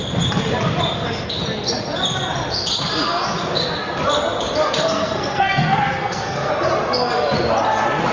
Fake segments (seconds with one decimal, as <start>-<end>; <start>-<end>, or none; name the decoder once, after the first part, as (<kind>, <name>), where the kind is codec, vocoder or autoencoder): 4.6-6.5 (codec, SNAC)